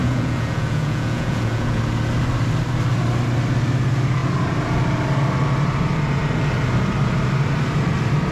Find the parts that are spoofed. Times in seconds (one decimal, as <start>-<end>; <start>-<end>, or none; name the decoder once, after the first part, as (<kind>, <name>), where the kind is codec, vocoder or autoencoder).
0.0-1.8 (vocoder, Vocos)